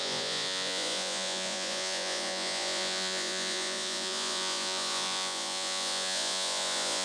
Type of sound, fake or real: fake